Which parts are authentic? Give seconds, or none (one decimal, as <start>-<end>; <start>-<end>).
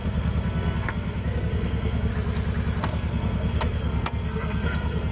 2.1-2.8